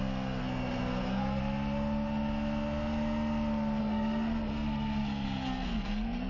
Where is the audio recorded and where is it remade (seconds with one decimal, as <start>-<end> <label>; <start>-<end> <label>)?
0.0-0.4 recorded; 0.4-1.4 remade; 1.4-3.8 recorded; 3.8-6.3 remade